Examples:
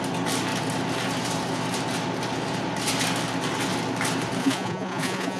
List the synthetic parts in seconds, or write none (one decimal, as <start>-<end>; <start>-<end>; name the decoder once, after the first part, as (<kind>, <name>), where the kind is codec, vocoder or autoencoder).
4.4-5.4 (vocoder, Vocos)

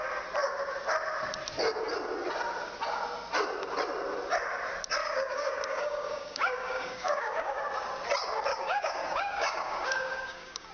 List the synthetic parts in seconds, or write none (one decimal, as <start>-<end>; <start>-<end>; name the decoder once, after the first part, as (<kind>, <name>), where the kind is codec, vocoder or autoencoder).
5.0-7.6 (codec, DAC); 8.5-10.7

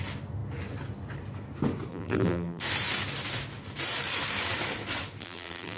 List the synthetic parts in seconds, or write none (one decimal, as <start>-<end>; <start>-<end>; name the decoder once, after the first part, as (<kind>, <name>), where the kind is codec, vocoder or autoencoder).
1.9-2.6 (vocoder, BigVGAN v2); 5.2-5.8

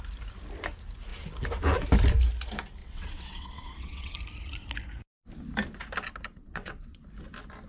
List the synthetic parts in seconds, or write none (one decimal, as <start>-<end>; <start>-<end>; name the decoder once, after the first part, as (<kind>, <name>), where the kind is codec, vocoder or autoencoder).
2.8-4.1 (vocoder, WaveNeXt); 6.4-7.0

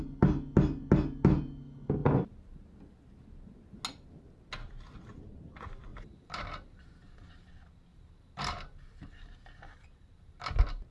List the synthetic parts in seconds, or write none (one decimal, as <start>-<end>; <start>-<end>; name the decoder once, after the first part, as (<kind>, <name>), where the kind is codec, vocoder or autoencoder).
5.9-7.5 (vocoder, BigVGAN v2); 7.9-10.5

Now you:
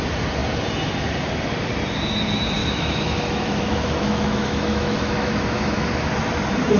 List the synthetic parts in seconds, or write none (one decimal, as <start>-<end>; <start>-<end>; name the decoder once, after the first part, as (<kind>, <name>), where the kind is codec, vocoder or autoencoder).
2.6-5.9 (autoencoder, DAC-VAE)